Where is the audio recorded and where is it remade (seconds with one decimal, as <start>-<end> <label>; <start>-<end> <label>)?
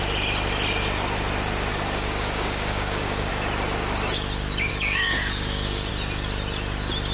0.0-1.7 recorded; 1.7-3.3 remade; 3.3-4.7 recorded; 4.7-5.9 remade; 5.9-7.1 recorded